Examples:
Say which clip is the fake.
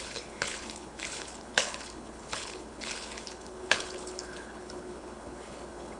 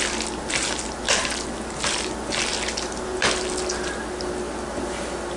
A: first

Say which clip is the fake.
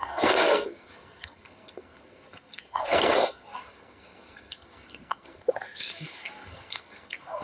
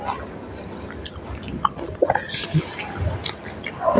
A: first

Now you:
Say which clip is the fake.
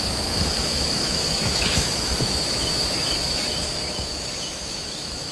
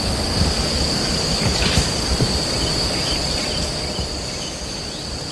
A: first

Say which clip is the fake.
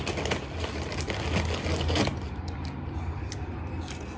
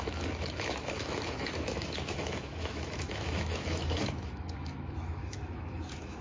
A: second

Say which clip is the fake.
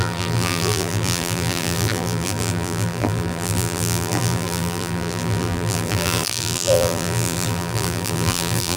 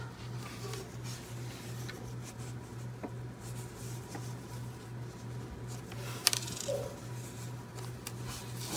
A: first